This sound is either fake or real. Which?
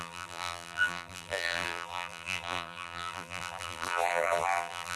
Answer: fake